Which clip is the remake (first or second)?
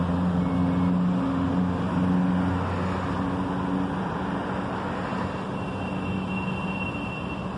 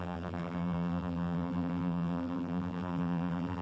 second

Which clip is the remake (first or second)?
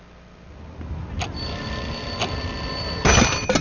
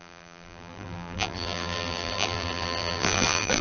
second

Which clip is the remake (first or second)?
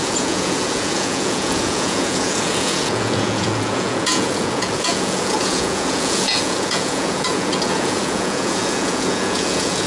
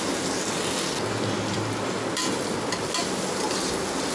first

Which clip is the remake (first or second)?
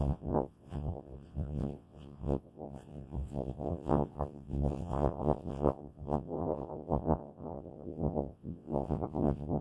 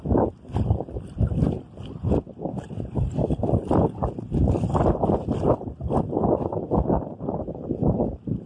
first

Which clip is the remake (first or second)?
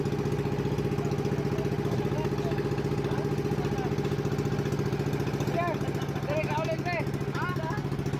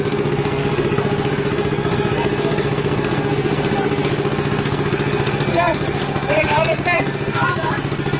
second